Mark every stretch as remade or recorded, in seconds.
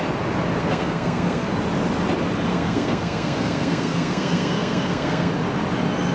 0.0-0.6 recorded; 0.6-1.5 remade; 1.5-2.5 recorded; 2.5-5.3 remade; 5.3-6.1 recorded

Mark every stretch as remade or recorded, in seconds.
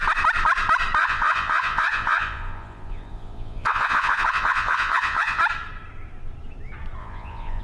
0.0-1.0 recorded; 1.0-5.4 remade; 5.4-7.0 recorded; 7.0-7.6 remade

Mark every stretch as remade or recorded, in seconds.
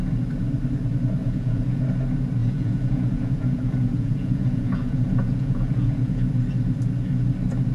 0.0-1.2 recorded; 1.2-1.8 remade; 1.8-2.4 recorded; 2.4-6.3 remade; 6.3-7.7 recorded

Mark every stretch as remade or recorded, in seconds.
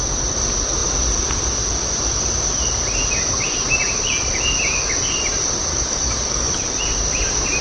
0.0-5.7 recorded; 5.7-6.5 remade; 6.5-7.6 recorded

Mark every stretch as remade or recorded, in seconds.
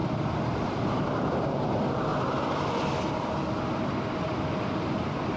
0.0-5.4 recorded